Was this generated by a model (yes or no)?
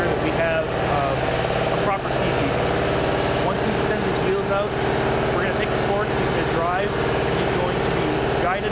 no